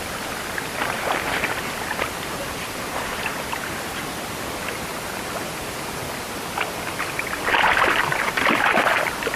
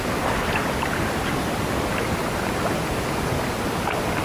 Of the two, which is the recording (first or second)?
second